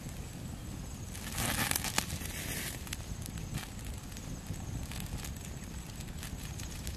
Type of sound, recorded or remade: recorded